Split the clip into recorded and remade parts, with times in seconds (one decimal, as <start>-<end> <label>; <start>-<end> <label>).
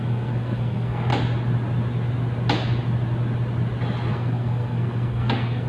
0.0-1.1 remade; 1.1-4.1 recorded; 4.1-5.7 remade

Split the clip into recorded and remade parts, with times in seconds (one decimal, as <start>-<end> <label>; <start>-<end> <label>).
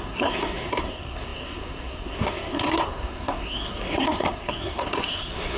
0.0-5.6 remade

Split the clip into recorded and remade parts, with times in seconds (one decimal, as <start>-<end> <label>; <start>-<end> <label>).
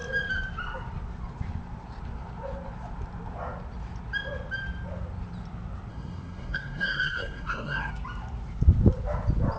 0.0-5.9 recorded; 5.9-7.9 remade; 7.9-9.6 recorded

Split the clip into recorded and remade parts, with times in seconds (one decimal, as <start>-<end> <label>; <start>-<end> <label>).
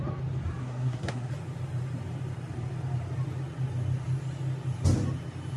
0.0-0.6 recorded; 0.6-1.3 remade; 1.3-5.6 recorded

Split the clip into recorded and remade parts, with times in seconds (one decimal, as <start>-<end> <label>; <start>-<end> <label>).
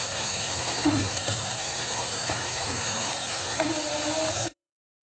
0.0-3.7 remade; 3.7-4.3 recorded; 4.3-5.0 remade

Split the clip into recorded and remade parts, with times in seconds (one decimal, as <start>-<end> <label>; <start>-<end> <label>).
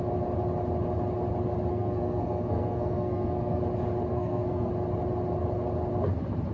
0.0-1.7 recorded; 1.7-3.6 remade; 3.6-4.1 recorded; 4.1-4.7 remade; 4.7-6.5 recorded